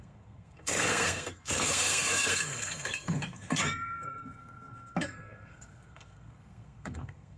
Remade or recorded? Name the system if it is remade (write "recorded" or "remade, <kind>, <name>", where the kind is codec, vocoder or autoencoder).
remade, codec, SNAC